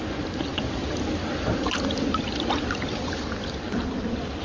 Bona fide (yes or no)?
yes